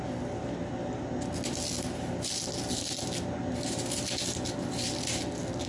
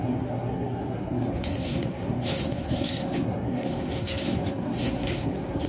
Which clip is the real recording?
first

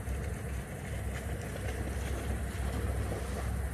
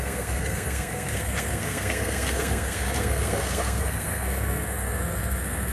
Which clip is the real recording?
first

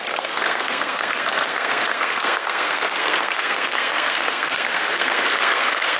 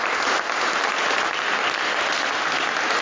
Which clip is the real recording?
second